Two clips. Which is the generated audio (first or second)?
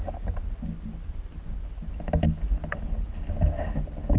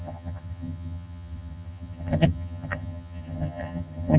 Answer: second